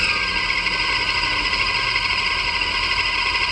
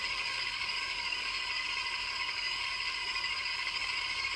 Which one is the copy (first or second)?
second